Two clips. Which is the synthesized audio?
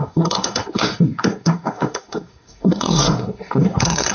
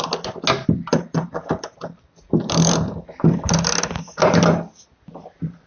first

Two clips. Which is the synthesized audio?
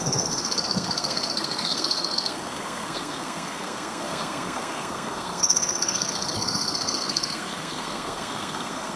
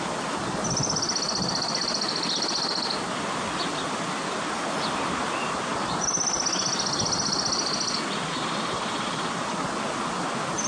first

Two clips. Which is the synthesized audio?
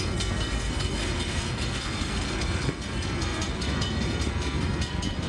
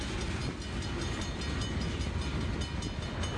first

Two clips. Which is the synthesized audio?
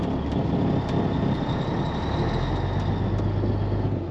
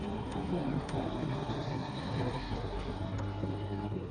second